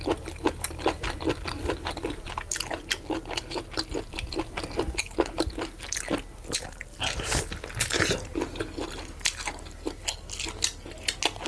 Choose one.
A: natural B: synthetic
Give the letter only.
A